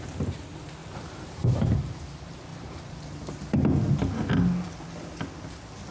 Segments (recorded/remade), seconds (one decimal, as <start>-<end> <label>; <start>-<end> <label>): 0.0-0.8 recorded; 0.8-2.0 remade; 2.0-2.5 recorded; 2.5-3.4 remade; 3.4-5.9 recorded